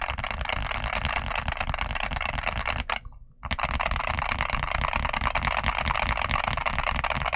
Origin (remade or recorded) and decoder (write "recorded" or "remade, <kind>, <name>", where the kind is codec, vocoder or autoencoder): recorded